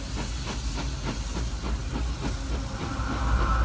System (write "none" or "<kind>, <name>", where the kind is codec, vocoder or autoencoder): none